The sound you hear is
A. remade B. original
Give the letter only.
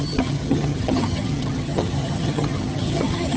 A